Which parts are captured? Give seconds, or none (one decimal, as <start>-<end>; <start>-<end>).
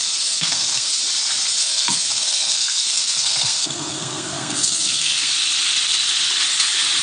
1.0-1.6; 5.3-7.0